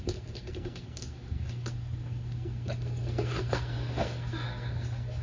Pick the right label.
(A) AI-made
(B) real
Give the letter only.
A